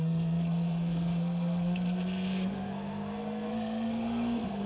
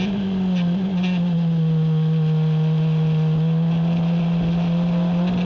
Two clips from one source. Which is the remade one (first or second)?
first